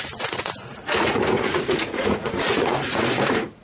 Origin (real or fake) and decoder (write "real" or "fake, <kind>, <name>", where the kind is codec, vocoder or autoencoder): fake, vocoder, Vocos